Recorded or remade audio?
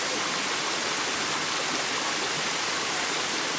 recorded